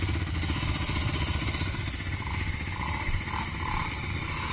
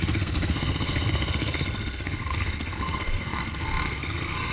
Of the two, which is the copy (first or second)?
second